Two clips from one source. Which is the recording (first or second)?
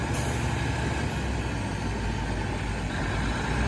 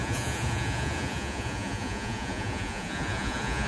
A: first